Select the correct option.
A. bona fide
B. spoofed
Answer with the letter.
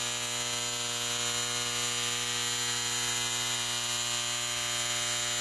A